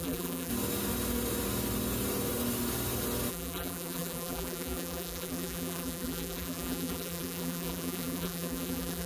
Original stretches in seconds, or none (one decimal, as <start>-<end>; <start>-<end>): 0.5-3.3